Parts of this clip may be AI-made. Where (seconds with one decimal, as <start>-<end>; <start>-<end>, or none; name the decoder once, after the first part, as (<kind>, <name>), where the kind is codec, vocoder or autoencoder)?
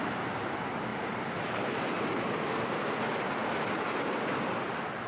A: 0.9-2.0 (vocoder, BigVGAN v2)